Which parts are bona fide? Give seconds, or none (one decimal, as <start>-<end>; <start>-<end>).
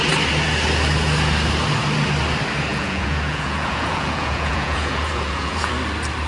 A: 0.0-2.7; 5.7-6.3